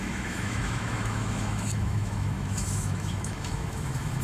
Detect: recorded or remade remade